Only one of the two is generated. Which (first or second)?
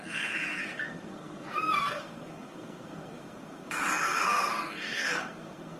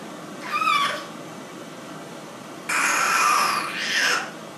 first